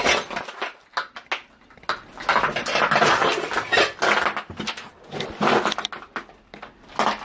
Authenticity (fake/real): real